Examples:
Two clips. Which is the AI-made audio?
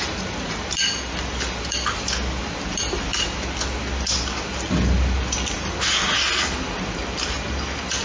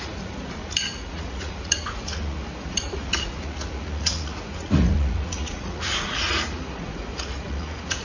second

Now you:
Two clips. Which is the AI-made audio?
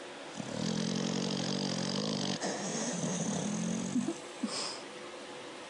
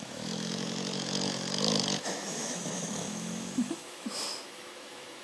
second